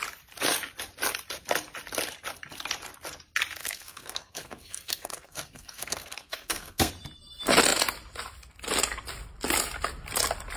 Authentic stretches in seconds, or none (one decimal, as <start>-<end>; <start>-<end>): 0.0-3.6; 6.9-10.6